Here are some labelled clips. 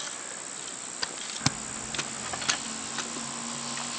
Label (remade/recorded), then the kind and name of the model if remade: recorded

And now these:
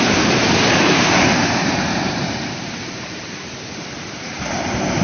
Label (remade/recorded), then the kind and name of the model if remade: remade, vocoder, BigVGAN v2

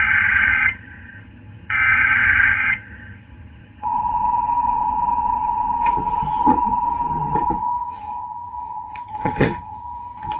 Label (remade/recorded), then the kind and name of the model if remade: remade, vocoder, HiFi-GAN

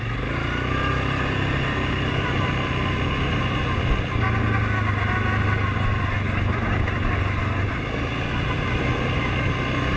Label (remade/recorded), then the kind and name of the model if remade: recorded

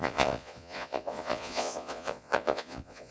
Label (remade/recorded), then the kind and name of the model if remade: remade, vocoder, Vocos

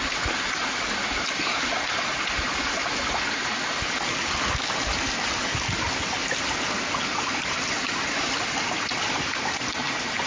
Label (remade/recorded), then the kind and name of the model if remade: recorded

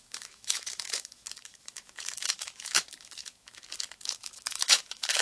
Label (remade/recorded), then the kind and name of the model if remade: remade, autoencoder, DAC-VAE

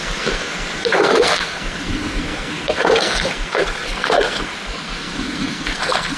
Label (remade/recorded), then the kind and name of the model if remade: remade, codec, SNAC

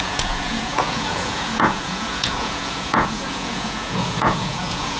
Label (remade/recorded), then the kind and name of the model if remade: remade, vocoder, Vocos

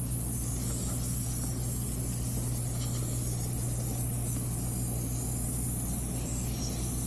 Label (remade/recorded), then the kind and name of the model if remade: recorded